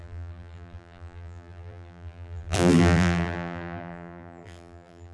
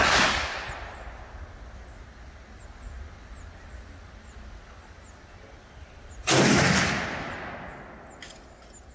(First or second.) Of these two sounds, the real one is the second